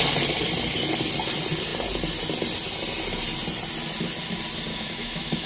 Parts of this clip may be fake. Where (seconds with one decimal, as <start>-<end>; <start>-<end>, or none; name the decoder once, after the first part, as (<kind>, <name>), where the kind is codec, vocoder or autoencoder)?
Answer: 4.7-5.5 (autoencoder, DAC-VAE)